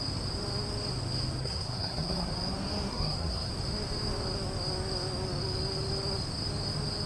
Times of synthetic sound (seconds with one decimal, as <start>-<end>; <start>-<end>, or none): 1.4-2.3; 2.9-3.5

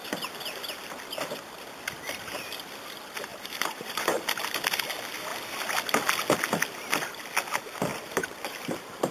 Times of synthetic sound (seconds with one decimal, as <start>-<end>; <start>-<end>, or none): 3.3-4.6; 7.9-9.1

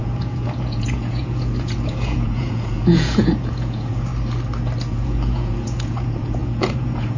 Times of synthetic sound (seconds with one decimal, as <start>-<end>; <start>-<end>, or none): 0.0-4.1; 4.9-7.2

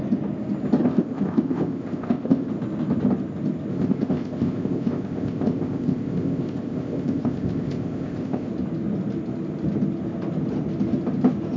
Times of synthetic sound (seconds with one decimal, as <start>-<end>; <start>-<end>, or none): 0.8-2.5; 3.7-8.5

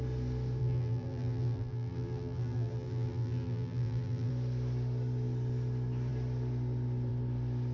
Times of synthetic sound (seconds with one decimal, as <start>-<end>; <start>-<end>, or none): 0.6-4.3

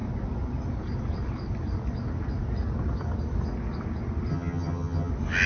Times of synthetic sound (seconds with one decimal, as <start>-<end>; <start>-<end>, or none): 4.3-5.1